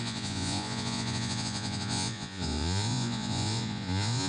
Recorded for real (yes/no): no